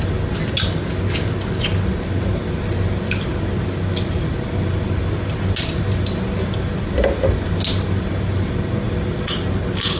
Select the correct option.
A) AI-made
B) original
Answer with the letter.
B